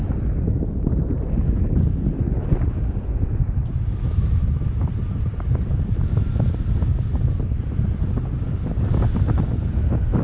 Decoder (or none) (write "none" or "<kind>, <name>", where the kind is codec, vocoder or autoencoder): none